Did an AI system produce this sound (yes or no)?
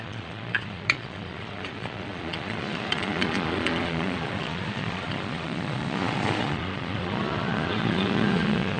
yes